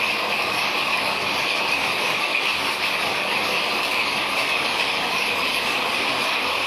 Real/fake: fake